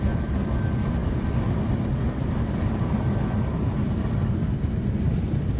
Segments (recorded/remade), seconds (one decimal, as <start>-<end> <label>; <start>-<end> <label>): 0.0-5.6 recorded

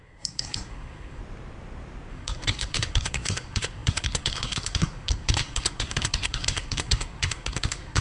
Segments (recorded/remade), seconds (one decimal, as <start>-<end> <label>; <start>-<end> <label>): 0.0-1.2 remade; 1.2-2.1 recorded; 2.1-8.0 remade

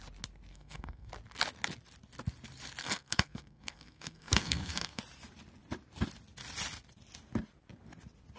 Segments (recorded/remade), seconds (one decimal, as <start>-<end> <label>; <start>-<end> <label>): 0.0-0.5 recorded; 0.5-1.1 remade; 1.1-2.8 recorded; 2.8-5.0 remade; 5.0-8.4 recorded

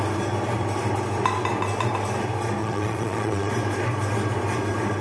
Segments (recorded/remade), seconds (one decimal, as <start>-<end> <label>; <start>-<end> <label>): 0.0-2.6 recorded; 2.6-3.5 remade; 3.5-5.0 recorded

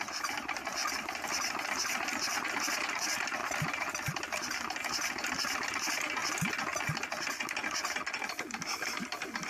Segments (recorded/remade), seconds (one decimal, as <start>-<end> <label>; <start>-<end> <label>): 0.0-6.2 remade; 6.2-8.3 recorded; 8.3-9.5 remade

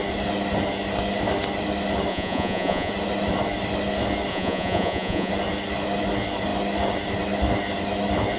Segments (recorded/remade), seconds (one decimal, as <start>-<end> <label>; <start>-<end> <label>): 0.0-2.1 recorded; 2.1-2.9 remade; 2.9-4.3 recorded; 4.3-5.3 remade; 5.3-8.4 recorded

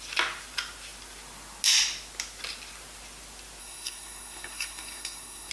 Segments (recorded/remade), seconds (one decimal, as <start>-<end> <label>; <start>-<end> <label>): 0.0-3.6 recorded; 3.6-5.5 remade